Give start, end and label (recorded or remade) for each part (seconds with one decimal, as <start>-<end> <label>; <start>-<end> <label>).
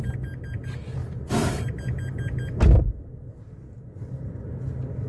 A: 0.0-5.1 recorded